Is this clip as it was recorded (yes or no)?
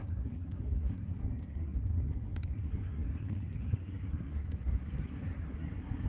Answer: no